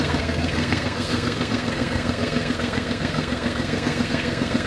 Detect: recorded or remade remade